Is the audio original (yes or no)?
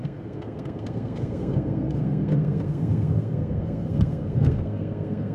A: no